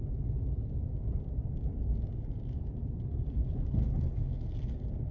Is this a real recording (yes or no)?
yes